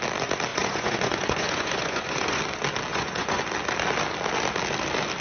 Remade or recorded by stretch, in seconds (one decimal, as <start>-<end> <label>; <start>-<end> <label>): 0.0-0.5 recorded; 0.5-2.4 remade; 2.4-2.9 recorded; 2.9-3.4 remade; 3.4-5.2 recorded